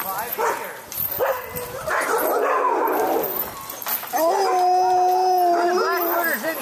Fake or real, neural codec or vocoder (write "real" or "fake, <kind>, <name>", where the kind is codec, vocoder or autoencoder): real